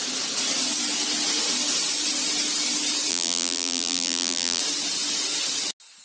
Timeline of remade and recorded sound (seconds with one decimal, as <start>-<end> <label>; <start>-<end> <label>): 0.0-3.1 recorded; 3.1-4.6 remade; 4.6-6.0 recorded